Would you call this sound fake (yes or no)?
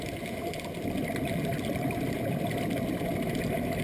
no